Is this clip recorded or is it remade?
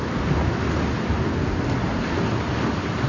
recorded